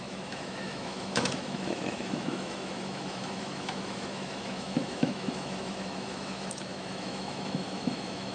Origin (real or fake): fake